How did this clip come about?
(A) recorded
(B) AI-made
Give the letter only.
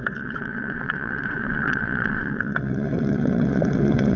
B